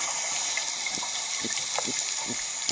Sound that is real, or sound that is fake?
real